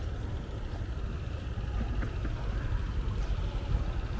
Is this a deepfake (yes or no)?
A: yes